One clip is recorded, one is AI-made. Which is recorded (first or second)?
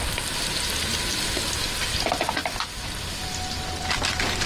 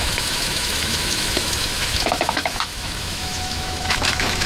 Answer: first